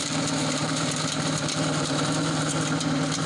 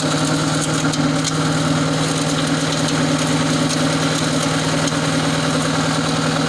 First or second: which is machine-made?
first